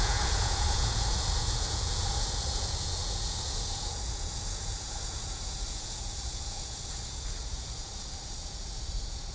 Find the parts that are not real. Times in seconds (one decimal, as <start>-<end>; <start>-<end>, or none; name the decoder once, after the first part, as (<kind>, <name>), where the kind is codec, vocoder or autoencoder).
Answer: 0.0-9.3 (vocoder, Vocos)